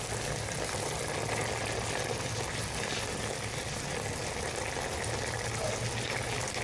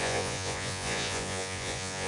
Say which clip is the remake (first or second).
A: second